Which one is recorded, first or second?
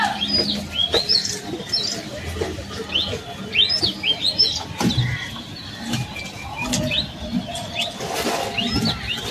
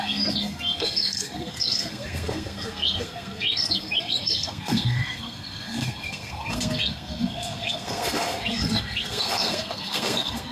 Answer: first